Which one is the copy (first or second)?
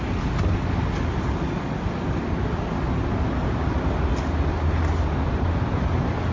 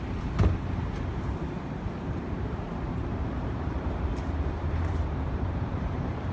second